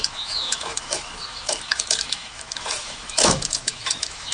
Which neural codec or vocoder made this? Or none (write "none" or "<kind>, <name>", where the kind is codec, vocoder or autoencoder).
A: autoencoder, DAC-VAE